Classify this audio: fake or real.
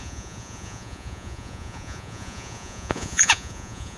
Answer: fake